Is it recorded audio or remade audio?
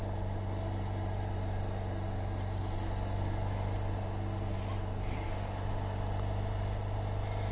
recorded